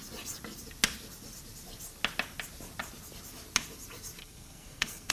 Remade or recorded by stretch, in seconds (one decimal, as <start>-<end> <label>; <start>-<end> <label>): 0.0-4.2 recorded; 4.2-5.1 remade